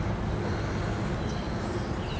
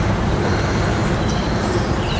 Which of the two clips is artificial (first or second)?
second